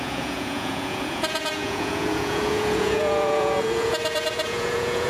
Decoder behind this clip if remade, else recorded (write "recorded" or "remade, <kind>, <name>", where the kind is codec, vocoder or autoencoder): remade, vocoder, Vocos